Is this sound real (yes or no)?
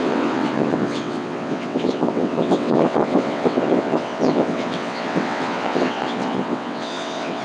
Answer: no